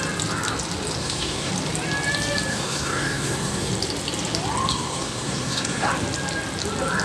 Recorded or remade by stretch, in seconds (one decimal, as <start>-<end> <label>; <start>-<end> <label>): 0.0-1.0 recorded; 1.0-1.5 remade; 1.5-2.5 recorded; 2.5-3.7 remade; 3.7-4.7 recorded; 4.7-5.9 remade; 5.9-7.0 recorded